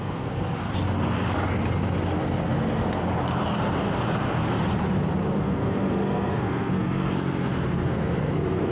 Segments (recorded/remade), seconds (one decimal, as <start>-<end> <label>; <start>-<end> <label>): 0.0-0.7 remade; 0.7-5.4 recorded; 5.4-8.7 remade